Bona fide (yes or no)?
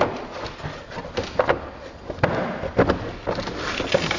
yes